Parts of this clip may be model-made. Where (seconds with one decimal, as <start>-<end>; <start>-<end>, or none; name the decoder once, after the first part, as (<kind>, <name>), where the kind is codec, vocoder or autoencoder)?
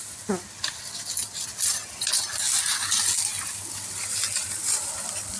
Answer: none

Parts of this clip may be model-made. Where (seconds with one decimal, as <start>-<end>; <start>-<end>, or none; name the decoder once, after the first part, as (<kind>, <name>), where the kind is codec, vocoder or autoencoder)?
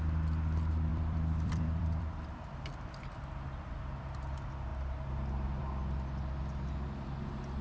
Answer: 0.9-3.7 (vocoder, BigVGAN v2)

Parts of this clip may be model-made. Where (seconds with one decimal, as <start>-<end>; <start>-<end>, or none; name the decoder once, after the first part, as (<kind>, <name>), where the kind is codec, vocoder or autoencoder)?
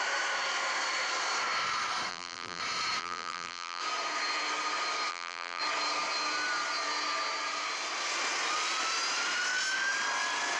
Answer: 2.1-2.6 (vocoder, BigVGAN v2); 3.0-3.8; 5.1-5.6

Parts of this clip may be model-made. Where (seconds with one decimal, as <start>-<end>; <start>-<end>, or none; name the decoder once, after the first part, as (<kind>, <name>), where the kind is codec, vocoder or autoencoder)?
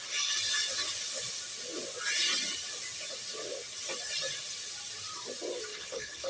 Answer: 5.7-6.3 (codec, HILCodec)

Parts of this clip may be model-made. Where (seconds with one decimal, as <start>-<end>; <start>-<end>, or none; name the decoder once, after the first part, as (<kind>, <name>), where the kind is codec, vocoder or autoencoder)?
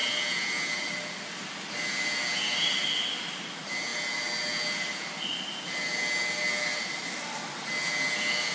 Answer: none